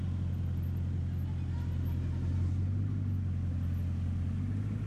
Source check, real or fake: real